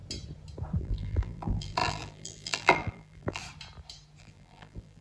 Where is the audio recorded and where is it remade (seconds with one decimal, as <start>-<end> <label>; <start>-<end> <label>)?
0.0-0.8 recorded; 0.8-3.4 remade; 3.4-4.2 recorded; 4.2-5.0 remade